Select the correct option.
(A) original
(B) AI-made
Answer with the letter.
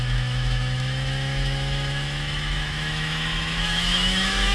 B